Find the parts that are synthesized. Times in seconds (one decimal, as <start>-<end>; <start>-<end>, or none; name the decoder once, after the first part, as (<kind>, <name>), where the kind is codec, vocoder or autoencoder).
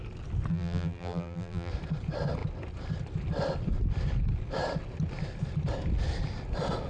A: 0.5-1.7 (vocoder, BigVGAN v2)